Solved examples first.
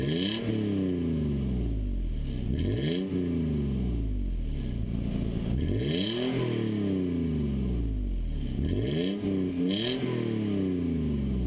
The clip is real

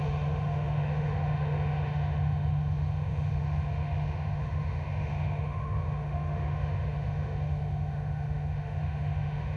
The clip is fake